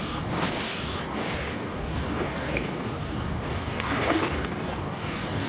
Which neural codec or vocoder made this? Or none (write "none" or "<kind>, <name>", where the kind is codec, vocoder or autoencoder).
codec, DAC